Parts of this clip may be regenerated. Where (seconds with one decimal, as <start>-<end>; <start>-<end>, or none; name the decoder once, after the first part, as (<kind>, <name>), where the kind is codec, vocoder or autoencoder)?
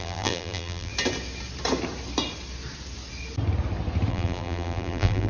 0.0-0.9 (vocoder, BigVGAN v2); 4.1-5.3